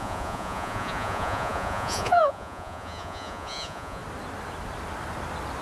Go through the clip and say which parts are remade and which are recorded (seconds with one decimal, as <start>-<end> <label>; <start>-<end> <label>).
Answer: 0.0-4.0 remade; 4.0-5.6 recorded